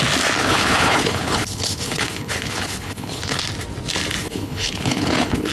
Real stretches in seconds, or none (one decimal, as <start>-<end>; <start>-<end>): 0.0-0.4; 3.4-4.2